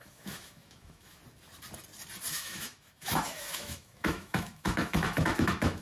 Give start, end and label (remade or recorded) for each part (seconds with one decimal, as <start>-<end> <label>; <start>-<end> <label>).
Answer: 0.0-1.2 remade; 1.2-2.3 recorded; 2.3-5.8 remade